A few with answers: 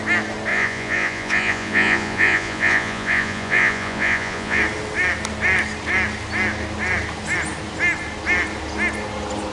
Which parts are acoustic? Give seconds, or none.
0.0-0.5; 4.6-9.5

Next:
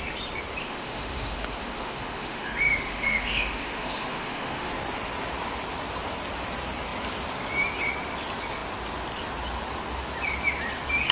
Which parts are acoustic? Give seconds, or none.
0.0-0.6; 4.7-11.1

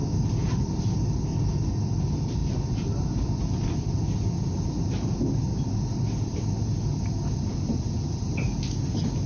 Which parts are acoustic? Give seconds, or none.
0.0-9.3

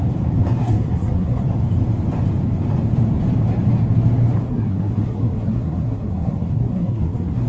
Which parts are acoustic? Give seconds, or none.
0.0-0.6; 1.4-4.5

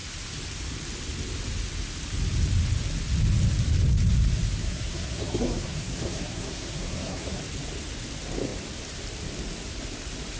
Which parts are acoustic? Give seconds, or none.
0.0-4.6; 7.4-10.4

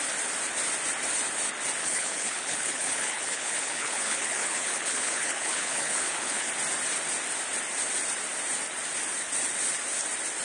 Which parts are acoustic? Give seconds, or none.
0.0-1.8; 6.5-10.4